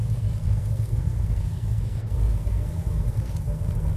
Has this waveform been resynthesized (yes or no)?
yes